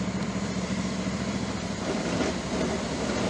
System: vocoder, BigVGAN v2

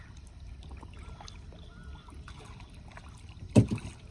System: none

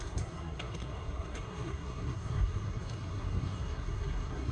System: codec, SNAC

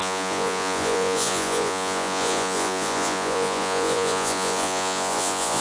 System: vocoder, Vocos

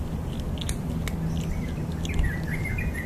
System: none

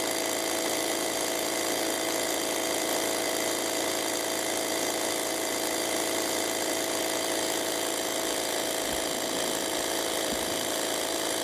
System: none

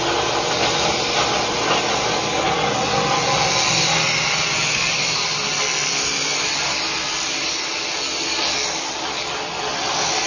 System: none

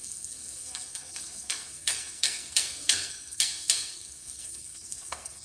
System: codec, SNAC